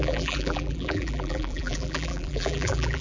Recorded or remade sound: remade